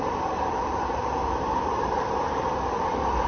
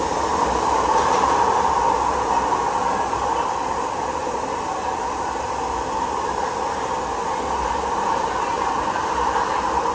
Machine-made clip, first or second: first